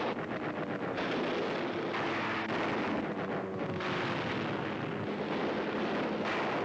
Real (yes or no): yes